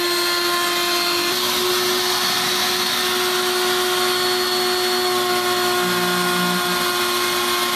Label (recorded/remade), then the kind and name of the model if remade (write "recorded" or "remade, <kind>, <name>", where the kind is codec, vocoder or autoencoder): recorded